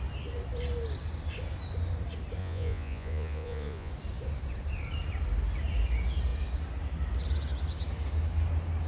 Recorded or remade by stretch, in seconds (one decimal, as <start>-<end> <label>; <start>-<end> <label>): 0.0-2.4 recorded; 2.4-3.9 remade; 3.9-8.9 recorded